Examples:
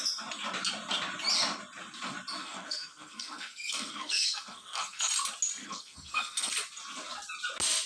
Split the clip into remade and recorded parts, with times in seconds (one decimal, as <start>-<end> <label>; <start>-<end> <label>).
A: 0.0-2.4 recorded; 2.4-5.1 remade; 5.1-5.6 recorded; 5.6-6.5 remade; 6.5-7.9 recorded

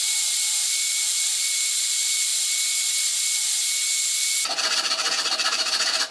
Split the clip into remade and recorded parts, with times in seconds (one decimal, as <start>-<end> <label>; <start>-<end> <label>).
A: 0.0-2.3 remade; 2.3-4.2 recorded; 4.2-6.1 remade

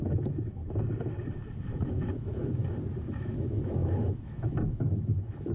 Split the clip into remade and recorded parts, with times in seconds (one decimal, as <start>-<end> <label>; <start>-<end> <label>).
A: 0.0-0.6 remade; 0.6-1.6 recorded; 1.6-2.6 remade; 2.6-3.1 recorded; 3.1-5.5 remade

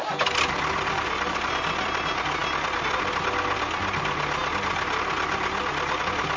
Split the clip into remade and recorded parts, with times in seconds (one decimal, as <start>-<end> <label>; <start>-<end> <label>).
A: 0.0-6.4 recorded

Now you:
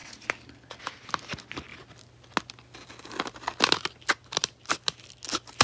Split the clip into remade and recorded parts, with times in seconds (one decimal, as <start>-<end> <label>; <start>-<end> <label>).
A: 0.0-5.6 recorded